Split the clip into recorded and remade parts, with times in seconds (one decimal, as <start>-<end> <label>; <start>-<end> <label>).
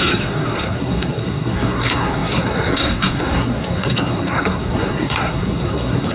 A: 0.0-6.1 remade